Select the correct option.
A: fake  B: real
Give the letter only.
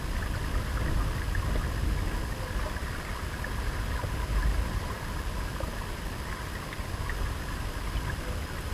B